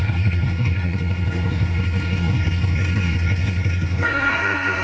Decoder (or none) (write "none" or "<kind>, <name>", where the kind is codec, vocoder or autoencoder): codec, SNAC